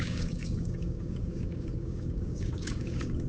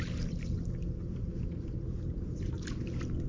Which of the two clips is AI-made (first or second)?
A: first